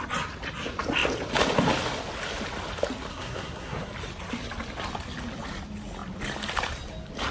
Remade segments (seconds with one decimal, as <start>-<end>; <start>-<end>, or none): 3.1-3.9